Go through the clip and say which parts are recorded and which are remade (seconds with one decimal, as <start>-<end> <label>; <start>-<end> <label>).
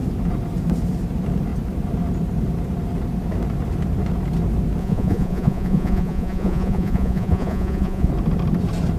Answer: 0.0-4.8 recorded; 4.8-8.1 remade; 8.1-9.0 recorded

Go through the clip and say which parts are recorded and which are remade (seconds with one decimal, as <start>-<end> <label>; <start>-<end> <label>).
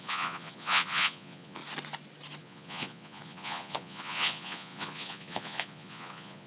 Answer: 0.0-1.6 remade; 1.6-2.4 recorded; 2.4-6.5 remade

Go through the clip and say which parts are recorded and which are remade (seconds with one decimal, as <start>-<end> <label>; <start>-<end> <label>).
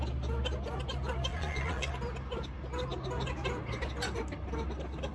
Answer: 0.0-1.3 recorded; 1.3-1.9 remade; 1.9-5.1 recorded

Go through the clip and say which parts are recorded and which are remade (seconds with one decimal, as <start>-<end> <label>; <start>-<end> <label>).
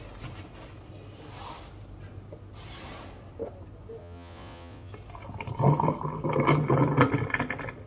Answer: 0.0-4.0 recorded; 4.0-4.9 remade; 4.9-7.9 recorded